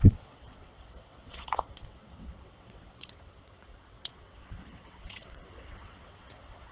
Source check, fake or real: fake